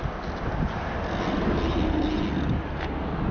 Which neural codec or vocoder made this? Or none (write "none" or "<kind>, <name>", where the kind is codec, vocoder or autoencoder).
none